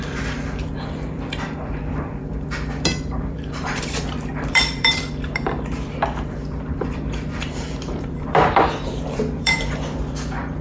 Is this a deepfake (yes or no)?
yes